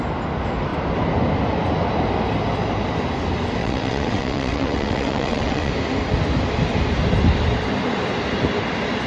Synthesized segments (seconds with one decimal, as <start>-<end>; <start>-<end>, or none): 3.6-5.7